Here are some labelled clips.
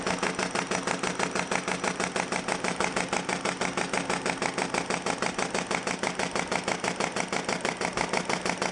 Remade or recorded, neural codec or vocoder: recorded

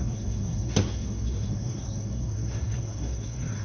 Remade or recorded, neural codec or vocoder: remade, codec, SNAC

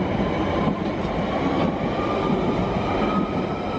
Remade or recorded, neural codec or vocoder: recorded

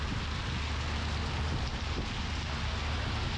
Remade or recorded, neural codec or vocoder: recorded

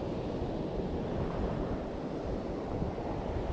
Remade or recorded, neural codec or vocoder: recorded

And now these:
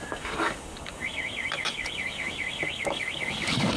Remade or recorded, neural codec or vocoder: remade, codec, DAC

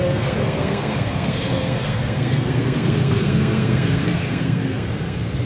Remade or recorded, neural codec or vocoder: remade, codec, SNAC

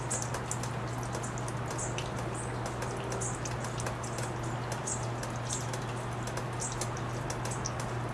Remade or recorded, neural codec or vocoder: recorded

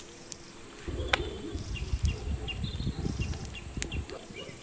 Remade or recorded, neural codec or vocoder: recorded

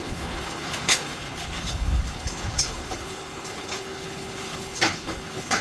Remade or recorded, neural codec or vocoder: remade, codec, HILCodec